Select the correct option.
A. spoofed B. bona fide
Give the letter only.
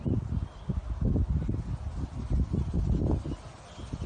B